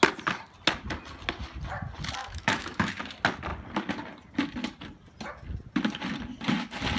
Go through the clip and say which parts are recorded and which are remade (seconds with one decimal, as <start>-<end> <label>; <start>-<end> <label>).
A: 0.0-2.2 recorded; 2.2-2.9 remade; 2.9-7.0 recorded

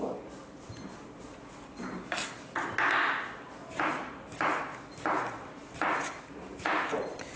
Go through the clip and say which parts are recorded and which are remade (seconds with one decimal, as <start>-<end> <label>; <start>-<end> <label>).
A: 0.0-7.4 recorded